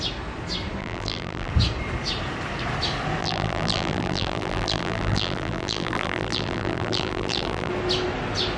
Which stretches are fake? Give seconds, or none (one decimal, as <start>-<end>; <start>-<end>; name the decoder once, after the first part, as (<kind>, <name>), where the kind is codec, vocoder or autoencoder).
0.8-1.5 (vocoder, BigVGAN v2); 3.2-7.7